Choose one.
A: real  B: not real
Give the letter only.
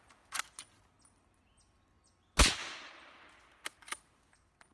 A